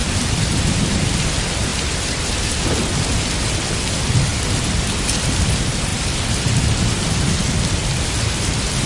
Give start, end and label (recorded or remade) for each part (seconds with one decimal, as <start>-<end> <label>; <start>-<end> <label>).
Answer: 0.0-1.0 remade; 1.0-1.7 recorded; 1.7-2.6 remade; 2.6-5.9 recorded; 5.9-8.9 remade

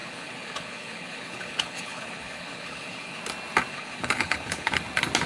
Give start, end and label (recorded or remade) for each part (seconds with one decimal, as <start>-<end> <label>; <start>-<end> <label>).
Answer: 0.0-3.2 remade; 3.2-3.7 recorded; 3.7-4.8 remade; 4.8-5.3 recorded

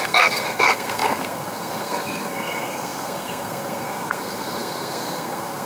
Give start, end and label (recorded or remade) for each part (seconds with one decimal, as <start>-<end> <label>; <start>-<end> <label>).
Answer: 0.0-5.7 remade

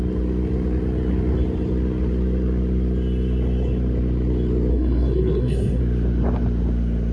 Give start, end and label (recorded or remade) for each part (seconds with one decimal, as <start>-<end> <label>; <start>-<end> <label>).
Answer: 0.0-4.7 recorded; 4.7-5.8 remade; 5.8-7.1 recorded

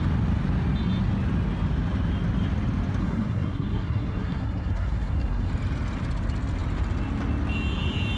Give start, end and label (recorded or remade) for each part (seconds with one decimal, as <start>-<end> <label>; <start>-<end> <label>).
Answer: 0.0-3.0 recorded; 3.0-5.5 remade; 5.5-8.2 recorded